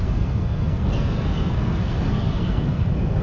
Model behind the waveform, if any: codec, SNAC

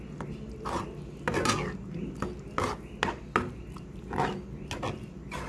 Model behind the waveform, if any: none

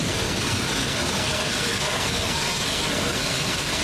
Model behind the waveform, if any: codec, SNAC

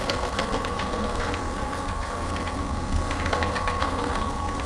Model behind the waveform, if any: codec, SNAC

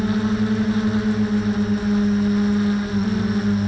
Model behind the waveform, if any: none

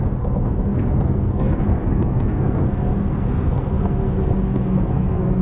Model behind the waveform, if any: codec, SNAC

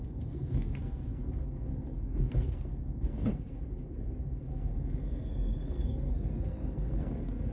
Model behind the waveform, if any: codec, SNAC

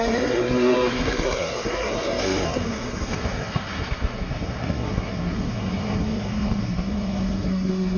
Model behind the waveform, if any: codec, SNAC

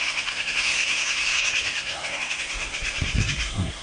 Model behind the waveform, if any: codec, SNAC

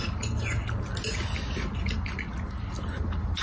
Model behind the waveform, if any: none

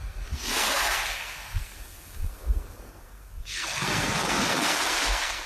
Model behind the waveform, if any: codec, SNAC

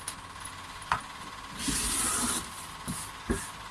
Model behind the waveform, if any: none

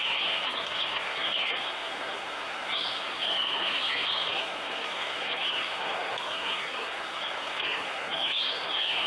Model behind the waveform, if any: codec, SNAC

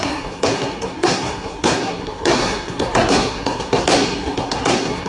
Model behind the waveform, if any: codec, SNAC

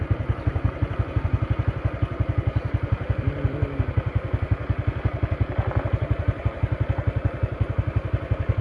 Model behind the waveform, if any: none